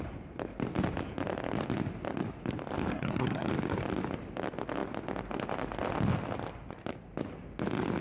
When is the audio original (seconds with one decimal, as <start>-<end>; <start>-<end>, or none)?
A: 0.0-2.9; 3.5-8.0